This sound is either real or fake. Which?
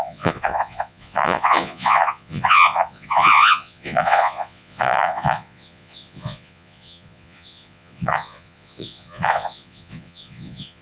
fake